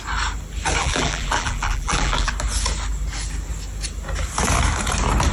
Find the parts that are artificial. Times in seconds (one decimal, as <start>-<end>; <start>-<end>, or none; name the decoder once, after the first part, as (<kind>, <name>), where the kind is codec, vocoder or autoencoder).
0.8-2.3 (vocoder, BigVGAN v2)